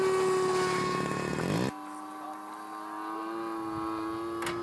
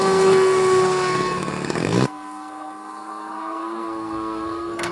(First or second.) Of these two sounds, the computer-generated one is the second